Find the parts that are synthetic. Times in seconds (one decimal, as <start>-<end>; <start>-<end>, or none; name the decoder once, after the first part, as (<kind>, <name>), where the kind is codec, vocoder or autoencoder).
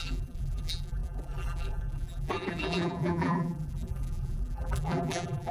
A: 0.0-5.5 (vocoder, BigVGAN v2)